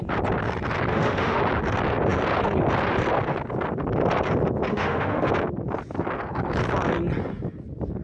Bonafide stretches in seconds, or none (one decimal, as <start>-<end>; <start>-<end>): 0.0-0.9; 1.4-4.7; 5.3-8.0